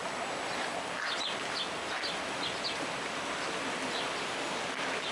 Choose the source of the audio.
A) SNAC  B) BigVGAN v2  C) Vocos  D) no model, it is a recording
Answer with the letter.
D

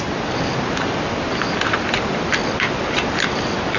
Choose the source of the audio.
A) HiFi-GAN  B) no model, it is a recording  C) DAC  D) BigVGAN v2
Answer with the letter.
B